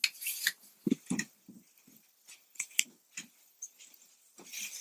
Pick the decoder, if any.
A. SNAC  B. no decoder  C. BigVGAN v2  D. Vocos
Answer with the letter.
B